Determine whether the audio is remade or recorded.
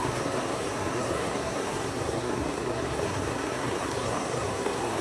remade